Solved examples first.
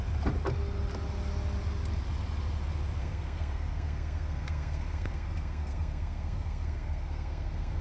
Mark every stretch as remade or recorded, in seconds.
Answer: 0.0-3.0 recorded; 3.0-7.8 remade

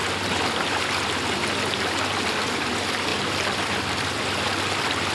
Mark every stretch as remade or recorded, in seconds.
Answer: 0.0-0.8 remade; 0.8-3.1 recorded; 3.1-4.2 remade; 4.2-5.1 recorded

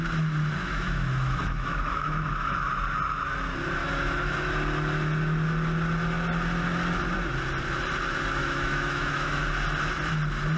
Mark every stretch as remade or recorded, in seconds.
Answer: 0.0-0.6 recorded; 0.6-2.7 remade; 2.7-3.8 recorded; 3.8-4.5 remade; 4.5-8.4 recorded; 8.4-9.4 remade; 9.4-10.6 recorded

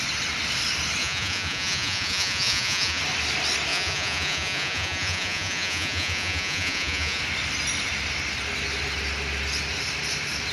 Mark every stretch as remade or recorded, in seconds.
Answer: 0.0-1.0 recorded; 1.0-3.0 remade; 3.0-3.7 recorded; 3.7-7.2 remade; 7.2-10.5 recorded

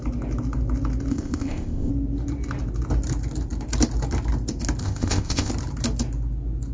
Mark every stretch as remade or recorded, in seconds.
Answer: 0.0-1.1 recorded; 1.1-1.9 remade; 1.9-4.8 recorded; 4.8-5.5 remade; 5.5-6.7 recorded

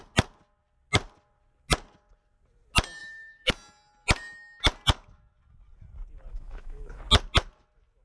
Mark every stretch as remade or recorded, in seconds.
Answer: 0.0-3.0 recorded; 3.0-3.5 remade; 3.5-6.3 recorded; 6.3-7.0 remade; 7.0-8.0 recorded